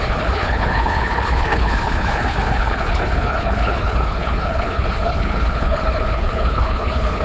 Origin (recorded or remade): remade